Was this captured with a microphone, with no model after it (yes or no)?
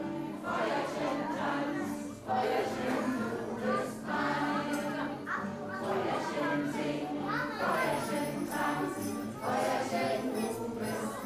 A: yes